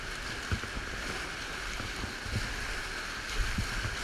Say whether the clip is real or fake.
real